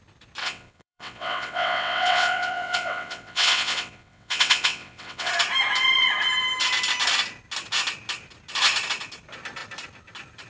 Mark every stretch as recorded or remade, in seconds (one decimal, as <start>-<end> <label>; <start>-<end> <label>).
0.0-0.4 recorded; 0.4-5.3 remade; 5.3-10.5 recorded

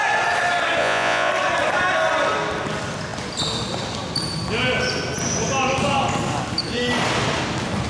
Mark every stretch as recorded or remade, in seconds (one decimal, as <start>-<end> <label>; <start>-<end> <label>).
0.0-0.8 recorded; 0.8-1.3 remade; 1.3-7.9 recorded